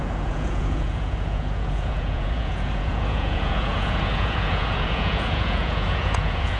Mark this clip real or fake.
fake